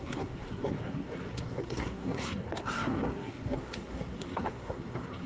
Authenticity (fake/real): fake